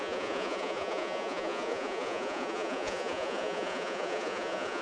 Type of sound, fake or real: fake